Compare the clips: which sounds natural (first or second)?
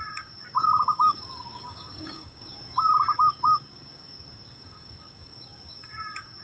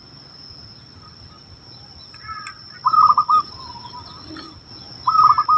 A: second